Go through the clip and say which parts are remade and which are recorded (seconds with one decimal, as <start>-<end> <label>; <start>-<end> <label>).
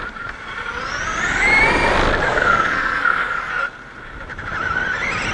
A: 0.0-2.3 recorded; 2.3-3.5 remade; 3.5-5.3 recorded